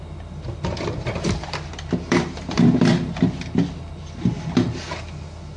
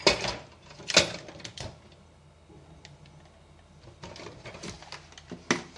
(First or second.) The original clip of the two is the second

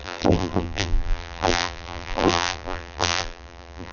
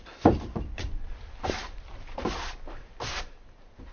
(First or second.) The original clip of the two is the second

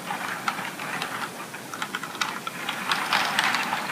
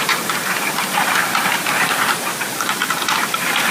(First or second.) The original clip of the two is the first